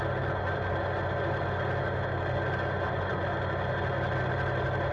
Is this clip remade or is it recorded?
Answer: recorded